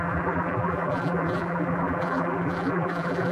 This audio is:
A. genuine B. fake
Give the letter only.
B